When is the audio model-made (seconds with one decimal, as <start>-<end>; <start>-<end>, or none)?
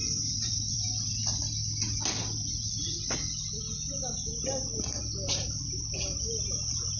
0.0-1.2; 5.0-7.0